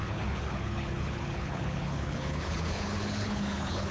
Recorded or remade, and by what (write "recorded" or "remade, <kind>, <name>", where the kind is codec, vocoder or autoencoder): remade, codec, HILCodec